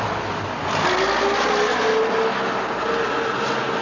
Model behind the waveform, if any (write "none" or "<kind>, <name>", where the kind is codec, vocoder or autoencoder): none